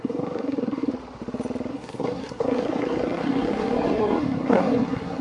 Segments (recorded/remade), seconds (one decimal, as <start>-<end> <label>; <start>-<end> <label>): 0.0-0.9 remade; 0.9-1.7 recorded; 1.7-5.2 remade

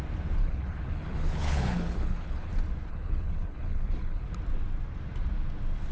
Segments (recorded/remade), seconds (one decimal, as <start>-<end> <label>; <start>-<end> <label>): 0.0-0.4 recorded; 0.4-2.5 remade; 2.5-2.9 recorded; 2.9-4.3 remade; 4.3-5.9 recorded

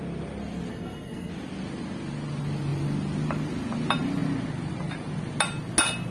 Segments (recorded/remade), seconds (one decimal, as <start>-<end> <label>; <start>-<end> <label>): 0.0-0.7 recorded; 0.7-1.3 remade; 1.3-6.1 recorded

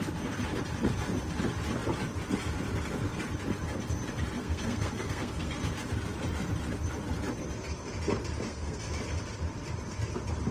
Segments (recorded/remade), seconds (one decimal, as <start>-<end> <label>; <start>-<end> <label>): 0.0-4.4 recorded; 4.4-5.6 remade; 5.6-8.5 recorded; 8.5-9.0 remade; 9.0-10.5 recorded

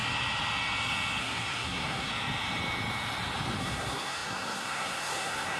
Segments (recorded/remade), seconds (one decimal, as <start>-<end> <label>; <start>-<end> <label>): 0.0-1.2 recorded; 1.2-2.1 remade; 2.1-3.6 recorded; 3.6-5.6 remade